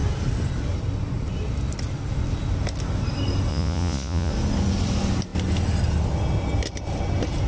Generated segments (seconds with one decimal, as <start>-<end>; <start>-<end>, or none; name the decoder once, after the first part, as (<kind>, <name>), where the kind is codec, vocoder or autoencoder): 3.5-4.3 (vocoder, Vocos)